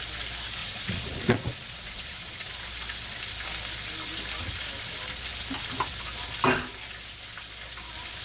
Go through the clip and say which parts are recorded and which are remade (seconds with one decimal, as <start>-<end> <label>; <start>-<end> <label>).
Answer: 0.0-0.6 recorded; 0.6-2.5 remade; 2.5-8.2 recorded